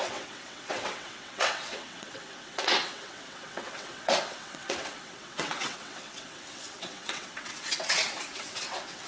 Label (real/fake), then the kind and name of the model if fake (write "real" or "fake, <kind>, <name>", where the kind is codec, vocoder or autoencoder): fake, vocoder, WaveNeXt